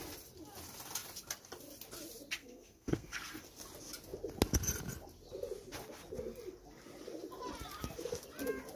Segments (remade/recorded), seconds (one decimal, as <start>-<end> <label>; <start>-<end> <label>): 0.0-2.4 recorded; 2.4-3.3 remade; 3.3-8.8 recorded